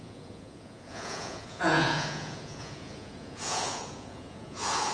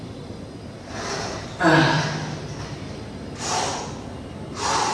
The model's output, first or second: first